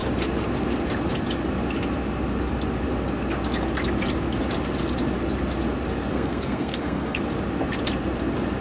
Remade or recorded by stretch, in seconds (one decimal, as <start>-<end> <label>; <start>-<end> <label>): 0.0-6.1 recorded; 6.1-7.2 remade; 7.2-8.6 recorded

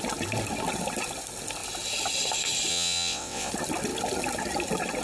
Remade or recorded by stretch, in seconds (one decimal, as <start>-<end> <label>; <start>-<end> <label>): 0.0-2.7 recorded; 2.7-3.5 remade; 3.5-5.0 recorded

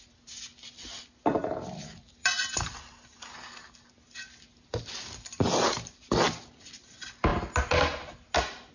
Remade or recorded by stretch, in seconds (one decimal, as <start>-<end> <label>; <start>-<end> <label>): 0.0-2.2 recorded; 2.2-2.8 remade; 2.8-4.7 recorded; 4.7-6.1 remade; 6.1-8.7 recorded

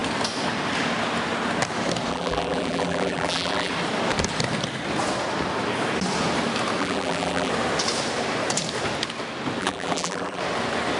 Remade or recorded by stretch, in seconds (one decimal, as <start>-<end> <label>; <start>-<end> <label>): 0.0-2.1 recorded; 2.1-3.7 remade; 3.7-6.8 recorded; 6.8-7.5 remade; 7.5-9.6 recorded; 9.6-10.4 remade; 10.4-11.0 recorded